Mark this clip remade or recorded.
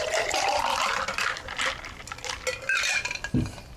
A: recorded